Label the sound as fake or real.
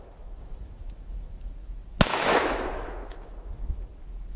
fake